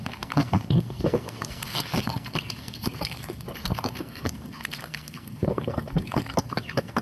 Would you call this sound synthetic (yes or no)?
yes